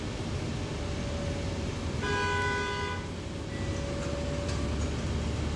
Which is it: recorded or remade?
recorded